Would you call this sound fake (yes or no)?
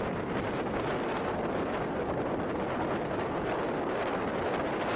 no